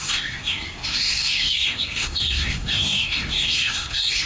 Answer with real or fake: fake